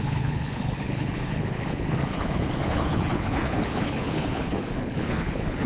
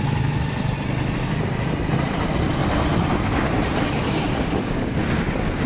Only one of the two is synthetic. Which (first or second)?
first